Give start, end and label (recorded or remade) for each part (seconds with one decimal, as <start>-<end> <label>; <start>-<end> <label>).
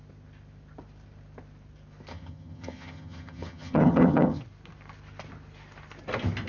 0.0-2.1 recorded; 2.1-4.4 remade; 4.4-6.5 recorded